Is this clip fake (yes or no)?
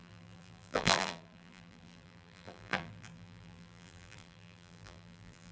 yes